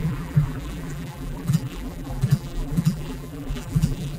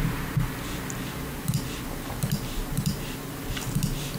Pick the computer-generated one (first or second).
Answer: first